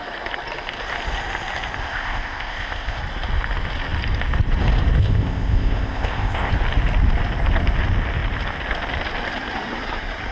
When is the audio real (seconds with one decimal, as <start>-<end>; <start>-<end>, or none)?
0.0-1.8; 3.0-5.0; 6.5-10.3